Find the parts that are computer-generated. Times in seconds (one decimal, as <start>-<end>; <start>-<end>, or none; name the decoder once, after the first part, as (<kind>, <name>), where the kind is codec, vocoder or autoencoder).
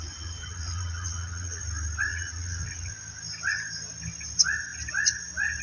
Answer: 0.0-1.6 (vocoder, Vocos); 2.1-2.9